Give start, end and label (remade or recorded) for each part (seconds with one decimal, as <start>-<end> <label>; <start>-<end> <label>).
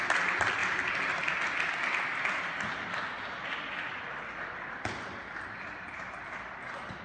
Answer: 0.0-7.0 recorded